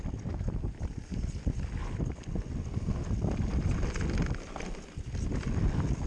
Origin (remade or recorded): recorded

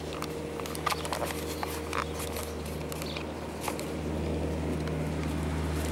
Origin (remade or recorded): recorded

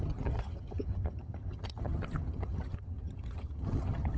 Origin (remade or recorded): remade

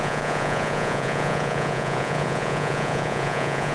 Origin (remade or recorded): remade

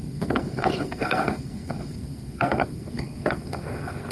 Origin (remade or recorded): remade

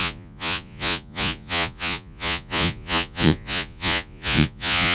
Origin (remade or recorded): remade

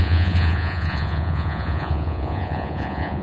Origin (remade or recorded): remade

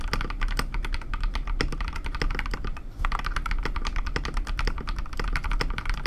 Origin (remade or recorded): recorded